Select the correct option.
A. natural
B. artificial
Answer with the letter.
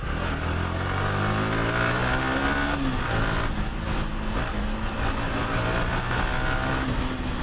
A